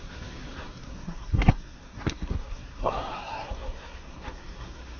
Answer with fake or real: fake